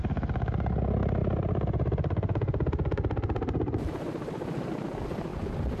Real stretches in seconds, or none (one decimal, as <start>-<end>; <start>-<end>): 0.0-1.2; 4.7-5.8